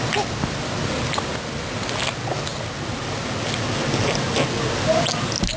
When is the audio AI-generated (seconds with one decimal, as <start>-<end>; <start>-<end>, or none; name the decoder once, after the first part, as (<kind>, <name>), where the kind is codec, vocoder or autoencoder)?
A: none